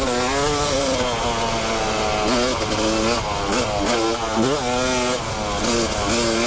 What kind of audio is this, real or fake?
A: real